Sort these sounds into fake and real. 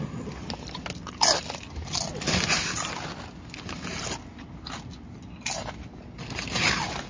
real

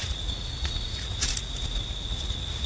fake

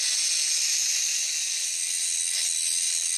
real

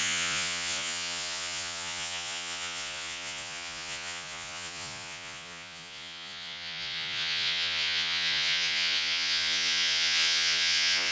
fake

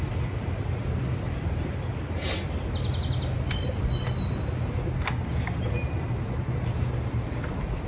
real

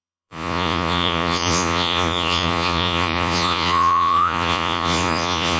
fake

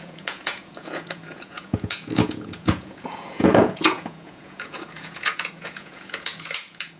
fake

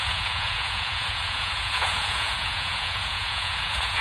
fake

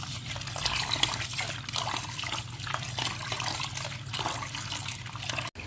real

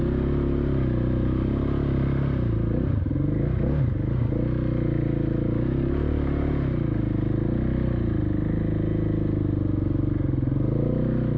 real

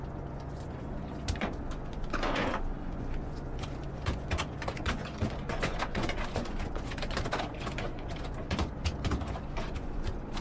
fake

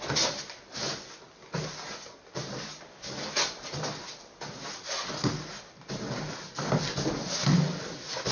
real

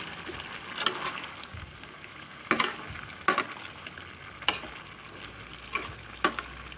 real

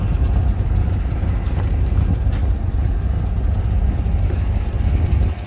real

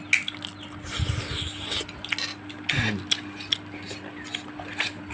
real